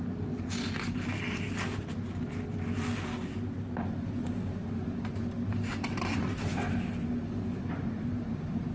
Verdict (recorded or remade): recorded